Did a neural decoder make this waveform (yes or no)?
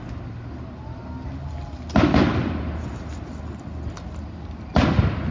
no